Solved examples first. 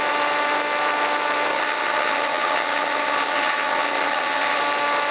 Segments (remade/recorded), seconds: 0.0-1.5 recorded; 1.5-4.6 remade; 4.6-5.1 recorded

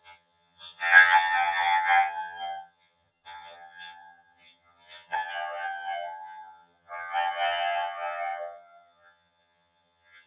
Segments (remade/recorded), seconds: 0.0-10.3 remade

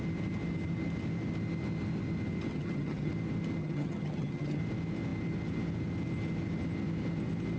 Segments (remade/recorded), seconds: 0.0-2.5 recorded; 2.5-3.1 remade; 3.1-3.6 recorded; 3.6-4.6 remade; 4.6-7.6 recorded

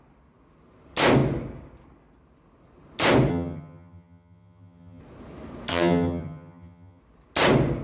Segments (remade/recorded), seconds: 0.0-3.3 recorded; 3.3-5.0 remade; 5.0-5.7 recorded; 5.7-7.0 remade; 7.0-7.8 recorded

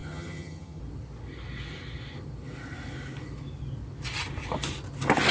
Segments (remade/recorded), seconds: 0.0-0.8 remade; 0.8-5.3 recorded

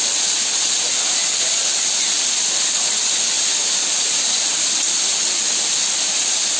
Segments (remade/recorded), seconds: 0.0-6.6 recorded

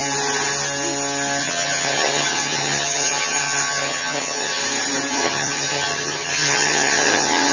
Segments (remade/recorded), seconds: 0.0-1.4 recorded; 1.4-4.6 remade; 4.6-5.1 recorded; 5.1-7.5 remade

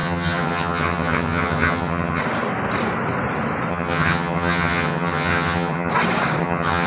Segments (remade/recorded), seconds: 0.0-2.2 remade; 2.2-3.7 recorded; 3.7-5.9 remade; 5.9-6.4 recorded; 6.4-6.9 remade